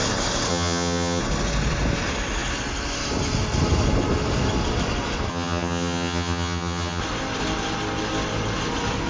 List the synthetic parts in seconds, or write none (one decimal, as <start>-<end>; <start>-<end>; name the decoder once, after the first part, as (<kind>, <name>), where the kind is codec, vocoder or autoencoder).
0.5-1.2 (vocoder, HiFi-GAN); 5.3-7.0